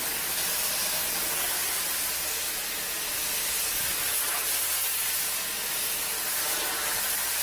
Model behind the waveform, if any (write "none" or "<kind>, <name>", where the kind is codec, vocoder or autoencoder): none